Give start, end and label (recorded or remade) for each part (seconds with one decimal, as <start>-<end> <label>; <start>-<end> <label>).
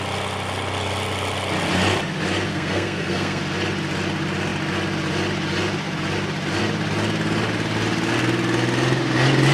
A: 0.0-2.5 recorded; 2.5-3.4 remade; 3.4-9.5 recorded